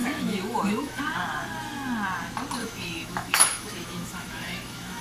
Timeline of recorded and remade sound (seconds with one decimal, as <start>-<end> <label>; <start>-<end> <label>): 0.0-1.0 remade; 1.0-2.6 recorded; 2.6-5.0 remade